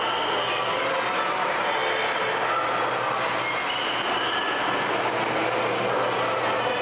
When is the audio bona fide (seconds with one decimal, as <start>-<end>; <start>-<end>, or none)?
0.0-6.8